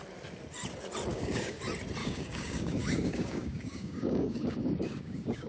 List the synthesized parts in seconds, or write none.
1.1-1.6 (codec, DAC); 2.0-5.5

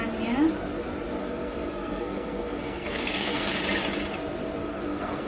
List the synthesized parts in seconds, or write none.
1.2-3.6 (codec, SNAC); 4.6-5.3